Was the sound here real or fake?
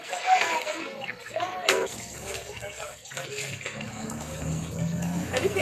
fake